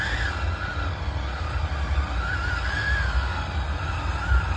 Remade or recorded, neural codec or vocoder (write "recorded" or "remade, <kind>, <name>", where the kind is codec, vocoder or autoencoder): recorded